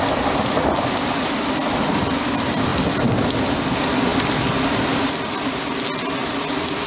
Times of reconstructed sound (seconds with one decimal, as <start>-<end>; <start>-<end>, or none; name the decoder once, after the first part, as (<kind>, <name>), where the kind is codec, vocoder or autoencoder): none